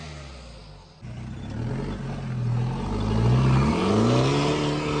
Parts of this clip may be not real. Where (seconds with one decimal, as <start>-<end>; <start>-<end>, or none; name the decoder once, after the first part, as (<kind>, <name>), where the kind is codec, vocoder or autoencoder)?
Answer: none